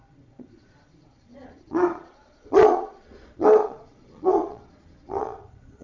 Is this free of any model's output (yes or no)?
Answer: no